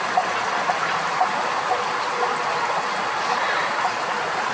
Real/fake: real